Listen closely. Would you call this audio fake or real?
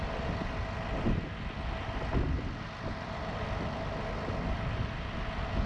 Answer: real